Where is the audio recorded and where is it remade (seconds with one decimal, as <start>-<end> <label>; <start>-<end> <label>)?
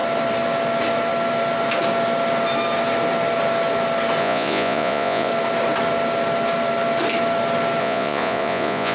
0.0-4.2 recorded; 4.2-5.3 remade; 5.3-7.8 recorded; 7.8-8.9 remade